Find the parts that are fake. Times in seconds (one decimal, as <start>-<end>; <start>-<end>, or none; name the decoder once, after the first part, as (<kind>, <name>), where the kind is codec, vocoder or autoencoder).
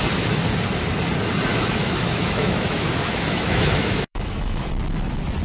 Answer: 1.5-4.7 (autoencoder, DAC-VAE)